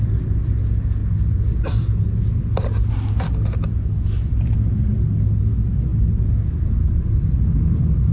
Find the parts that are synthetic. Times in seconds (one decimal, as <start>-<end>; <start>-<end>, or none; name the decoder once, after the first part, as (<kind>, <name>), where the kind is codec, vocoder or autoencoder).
1.0-2.9 (vocoder, BigVGAN v2)